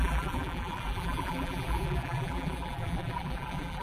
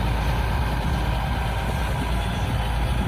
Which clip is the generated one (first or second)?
first